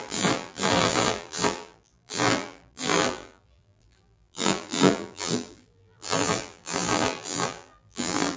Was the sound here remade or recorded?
remade